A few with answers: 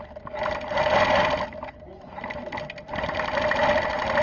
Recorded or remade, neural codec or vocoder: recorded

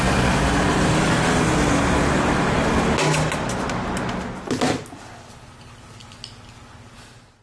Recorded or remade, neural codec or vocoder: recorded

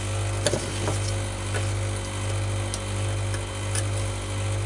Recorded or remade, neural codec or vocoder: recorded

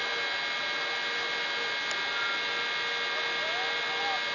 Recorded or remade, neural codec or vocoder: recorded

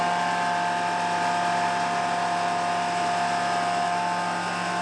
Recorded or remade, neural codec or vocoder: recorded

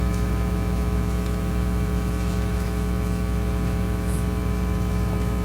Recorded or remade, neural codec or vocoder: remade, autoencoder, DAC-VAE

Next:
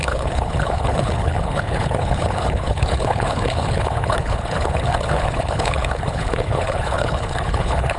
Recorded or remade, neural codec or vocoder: remade, codec, HILCodec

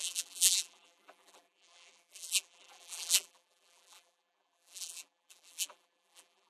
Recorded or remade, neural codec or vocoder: remade, vocoder, BigVGAN v2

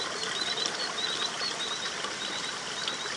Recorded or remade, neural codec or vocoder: recorded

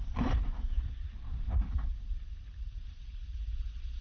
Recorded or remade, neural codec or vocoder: remade, vocoder, BigVGAN v2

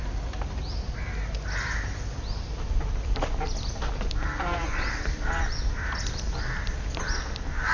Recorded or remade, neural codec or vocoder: recorded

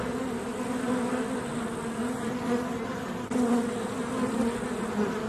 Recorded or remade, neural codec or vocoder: recorded